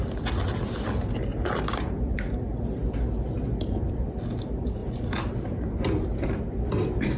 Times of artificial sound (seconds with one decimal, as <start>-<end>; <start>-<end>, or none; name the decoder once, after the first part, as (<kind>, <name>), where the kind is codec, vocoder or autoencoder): 1.3-2.0 (vocoder, BigVGAN v2); 4.8-6.5